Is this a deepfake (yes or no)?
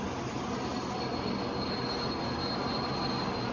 no